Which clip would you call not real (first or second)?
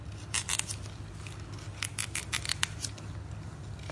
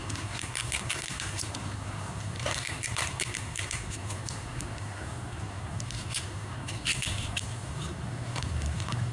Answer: second